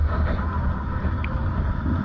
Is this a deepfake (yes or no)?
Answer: no